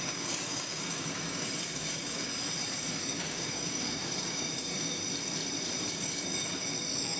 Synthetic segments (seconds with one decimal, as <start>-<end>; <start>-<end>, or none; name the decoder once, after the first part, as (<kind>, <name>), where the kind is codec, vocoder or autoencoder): 0.0-2.3 (codec, DAC); 2.9-5.0; 5.9-7.2